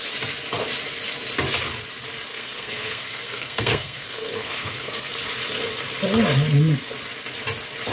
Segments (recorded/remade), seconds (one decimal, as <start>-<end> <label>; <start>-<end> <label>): 0.0-2.3 recorded; 2.3-5.1 remade; 5.1-7.9 recorded